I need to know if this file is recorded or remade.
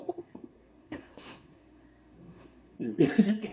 remade